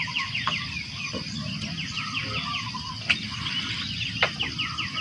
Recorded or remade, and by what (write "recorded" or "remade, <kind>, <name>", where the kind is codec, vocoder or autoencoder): recorded